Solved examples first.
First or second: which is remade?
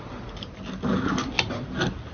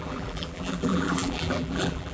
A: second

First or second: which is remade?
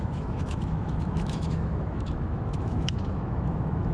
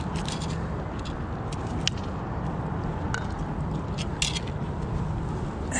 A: first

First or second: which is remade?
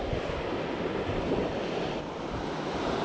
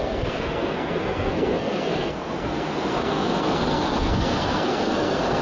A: second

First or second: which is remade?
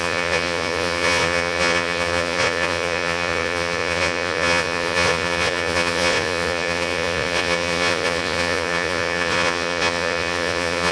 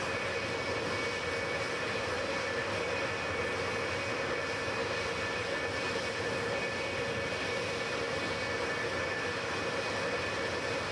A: first